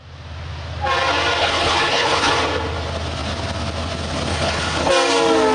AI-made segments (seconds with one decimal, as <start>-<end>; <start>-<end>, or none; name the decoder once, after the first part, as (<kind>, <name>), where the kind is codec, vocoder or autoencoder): 1.4-2.3 (codec, HILCodec); 4.3-4.9